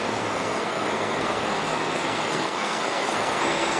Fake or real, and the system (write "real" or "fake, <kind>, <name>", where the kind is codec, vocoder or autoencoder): fake, codec, SNAC